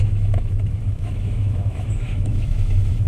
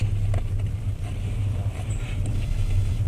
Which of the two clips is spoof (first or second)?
first